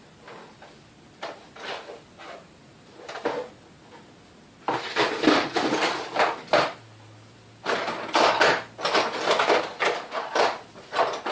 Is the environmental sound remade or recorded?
recorded